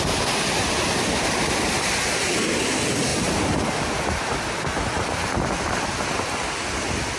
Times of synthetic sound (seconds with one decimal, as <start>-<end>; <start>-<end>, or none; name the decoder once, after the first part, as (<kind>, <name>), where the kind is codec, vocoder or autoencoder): none